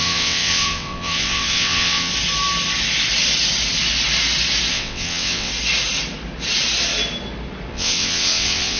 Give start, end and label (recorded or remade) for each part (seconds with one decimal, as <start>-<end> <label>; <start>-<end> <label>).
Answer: 0.0-2.1 remade; 2.1-4.7 recorded; 4.7-5.5 remade; 5.5-7.7 recorded; 7.7-8.8 remade